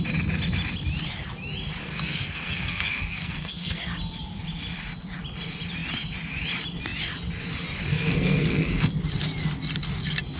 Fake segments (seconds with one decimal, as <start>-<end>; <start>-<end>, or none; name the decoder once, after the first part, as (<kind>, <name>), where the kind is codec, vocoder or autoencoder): 1.8-3.8 (codec, SNAC); 7.9-8.9